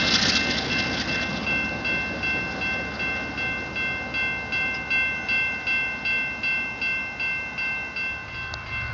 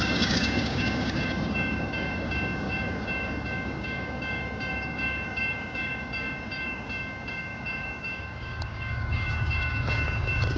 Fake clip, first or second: second